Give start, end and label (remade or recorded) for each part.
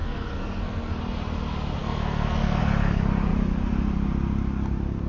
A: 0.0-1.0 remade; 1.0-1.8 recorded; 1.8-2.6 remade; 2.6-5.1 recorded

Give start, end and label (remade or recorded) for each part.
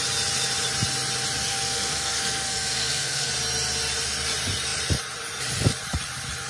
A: 0.0-1.5 recorded; 1.5-3.3 remade; 3.3-6.5 recorded